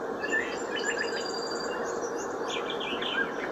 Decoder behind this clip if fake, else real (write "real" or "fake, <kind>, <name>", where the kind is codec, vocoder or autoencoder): real